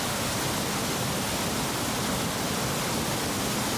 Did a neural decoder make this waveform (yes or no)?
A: no